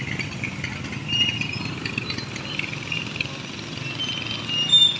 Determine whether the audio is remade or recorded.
recorded